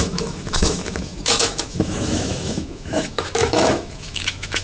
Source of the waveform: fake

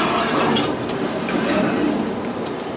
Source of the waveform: fake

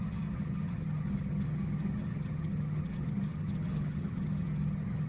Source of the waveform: fake